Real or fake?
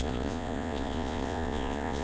fake